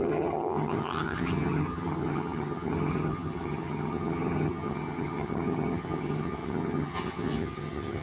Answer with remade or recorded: remade